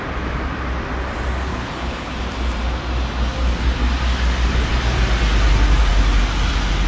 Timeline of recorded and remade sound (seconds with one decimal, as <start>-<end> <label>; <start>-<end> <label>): 0.0-1.5 recorded; 1.5-2.1 remade; 2.1-6.9 recorded